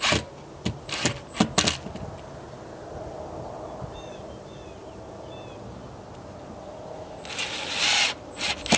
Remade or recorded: recorded